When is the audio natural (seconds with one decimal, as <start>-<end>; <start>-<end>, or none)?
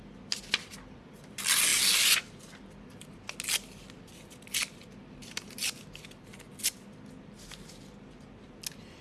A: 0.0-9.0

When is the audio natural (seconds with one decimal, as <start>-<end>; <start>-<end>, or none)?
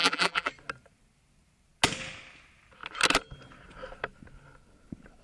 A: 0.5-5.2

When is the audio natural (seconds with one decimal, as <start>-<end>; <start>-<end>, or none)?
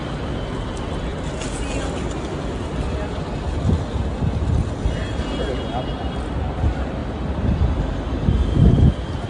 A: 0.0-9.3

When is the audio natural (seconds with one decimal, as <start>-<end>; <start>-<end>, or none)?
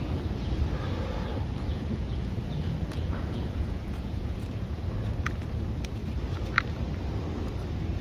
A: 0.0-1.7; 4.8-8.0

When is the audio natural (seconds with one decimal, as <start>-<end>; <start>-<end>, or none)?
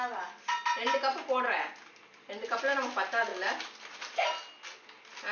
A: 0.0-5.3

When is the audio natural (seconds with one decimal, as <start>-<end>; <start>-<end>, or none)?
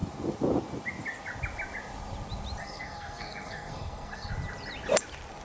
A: 0.0-2.6; 4.3-5.4